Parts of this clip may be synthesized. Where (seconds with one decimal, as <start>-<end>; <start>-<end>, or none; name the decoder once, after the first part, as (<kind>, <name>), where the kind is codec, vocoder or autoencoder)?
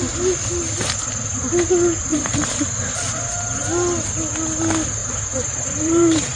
2.1-2.6 (vocoder, BigVGAN v2); 5.0-6.4